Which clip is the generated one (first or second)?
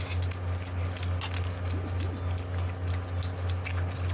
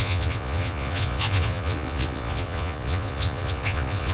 second